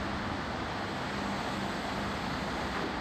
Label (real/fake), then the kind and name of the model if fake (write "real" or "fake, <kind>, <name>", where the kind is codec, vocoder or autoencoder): real